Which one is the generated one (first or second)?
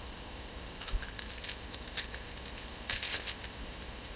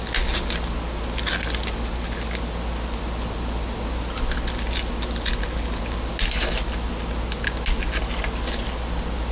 first